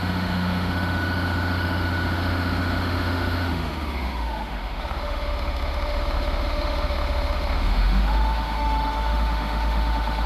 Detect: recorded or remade remade